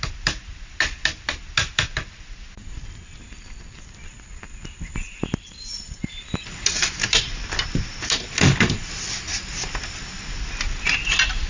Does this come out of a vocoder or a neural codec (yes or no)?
no